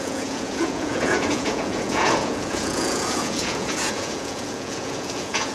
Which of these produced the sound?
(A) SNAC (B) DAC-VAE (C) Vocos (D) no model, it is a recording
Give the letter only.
C